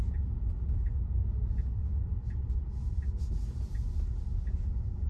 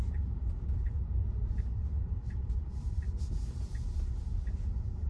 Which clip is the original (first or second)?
first